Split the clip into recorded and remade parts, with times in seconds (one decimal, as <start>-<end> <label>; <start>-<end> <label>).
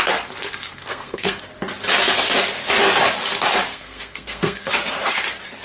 0.0-0.4 recorded; 0.4-1.4 remade; 1.4-3.7 recorded; 3.7-4.7 remade; 4.7-5.6 recorded